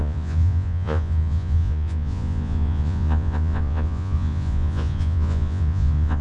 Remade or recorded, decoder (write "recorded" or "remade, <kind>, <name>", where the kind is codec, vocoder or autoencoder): remade, vocoder, Vocos